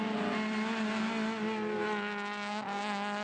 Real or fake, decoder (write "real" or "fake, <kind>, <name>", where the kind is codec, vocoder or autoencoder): real